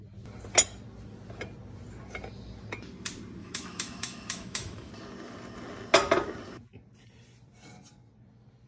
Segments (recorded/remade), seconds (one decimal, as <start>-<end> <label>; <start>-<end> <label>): 0.0-3.4 recorded; 3.4-4.9 remade; 4.9-8.7 recorded